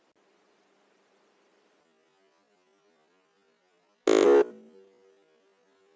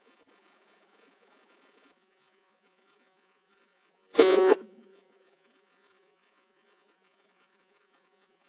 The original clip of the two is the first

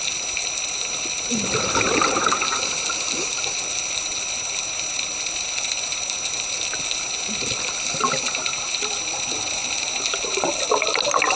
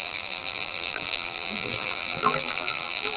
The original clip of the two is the first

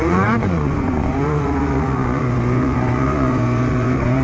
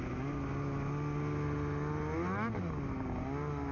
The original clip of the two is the second